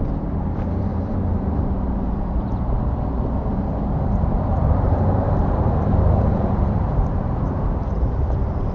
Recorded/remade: remade